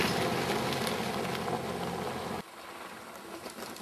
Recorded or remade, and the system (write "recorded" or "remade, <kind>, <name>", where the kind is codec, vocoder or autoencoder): recorded